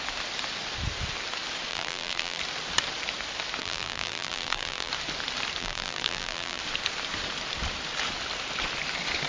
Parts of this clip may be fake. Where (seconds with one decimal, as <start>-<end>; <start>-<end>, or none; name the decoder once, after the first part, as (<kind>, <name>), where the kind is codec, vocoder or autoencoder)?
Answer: 1.7-2.4 (vocoder, BigVGAN v2); 3.6-4.9; 5.6-6.6